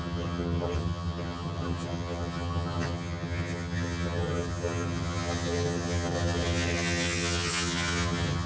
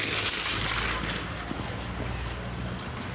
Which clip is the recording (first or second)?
second